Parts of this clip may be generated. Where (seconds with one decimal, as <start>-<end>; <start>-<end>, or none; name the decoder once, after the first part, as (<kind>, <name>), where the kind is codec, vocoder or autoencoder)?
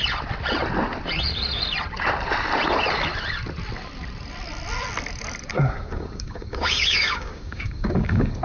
5.5-8.4 (codec, DAC)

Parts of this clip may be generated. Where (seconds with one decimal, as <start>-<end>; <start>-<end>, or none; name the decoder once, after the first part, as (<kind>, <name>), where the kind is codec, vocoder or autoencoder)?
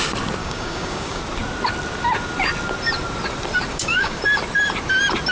0.4-1.2 (codec, DAC); 3.7-4.2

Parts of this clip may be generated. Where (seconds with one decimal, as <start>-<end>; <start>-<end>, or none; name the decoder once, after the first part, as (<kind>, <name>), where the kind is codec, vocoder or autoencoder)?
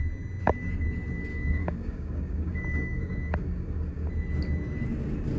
1.3-4.1 (codec, DAC)